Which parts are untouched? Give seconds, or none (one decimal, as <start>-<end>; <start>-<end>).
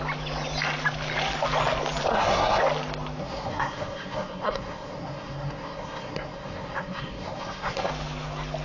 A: 0.0-2.1; 2.6-3.2; 7.9-8.6